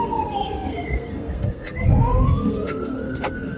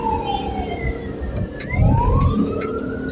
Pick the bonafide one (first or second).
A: second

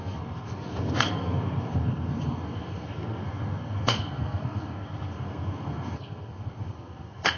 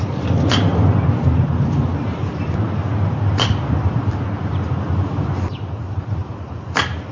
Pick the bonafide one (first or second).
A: second